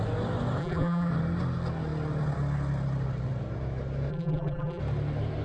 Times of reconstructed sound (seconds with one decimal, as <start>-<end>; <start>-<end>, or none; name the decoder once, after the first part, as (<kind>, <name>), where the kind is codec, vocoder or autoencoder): 0.6-1.1 (vocoder, BigVGAN v2); 4.1-4.8